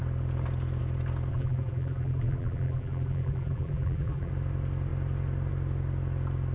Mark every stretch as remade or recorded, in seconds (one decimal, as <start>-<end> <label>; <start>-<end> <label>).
0.0-1.3 recorded; 1.3-4.3 remade; 4.3-6.5 recorded